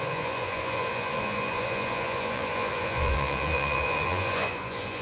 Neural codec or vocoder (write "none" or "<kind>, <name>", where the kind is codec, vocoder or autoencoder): vocoder, Vocos